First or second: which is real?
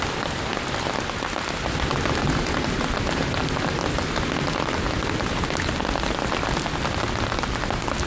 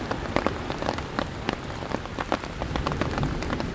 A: first